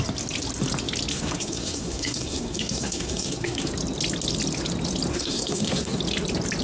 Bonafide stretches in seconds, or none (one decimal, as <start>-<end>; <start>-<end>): 0.0-1.1; 3.7-5.1; 6.0-6.6